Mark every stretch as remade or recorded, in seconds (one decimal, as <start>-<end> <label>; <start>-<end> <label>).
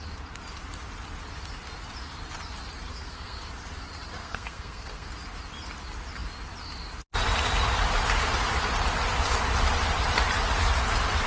0.0-2.9 recorded; 2.9-3.4 remade; 3.4-4.2 recorded; 4.2-5.1 remade; 5.1-11.3 recorded